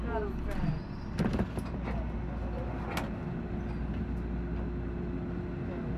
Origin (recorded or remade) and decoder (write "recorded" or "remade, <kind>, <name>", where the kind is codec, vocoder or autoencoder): recorded